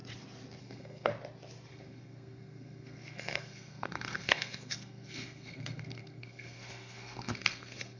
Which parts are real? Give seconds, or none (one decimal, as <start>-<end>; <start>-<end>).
0.0-0.6; 1.1-1.7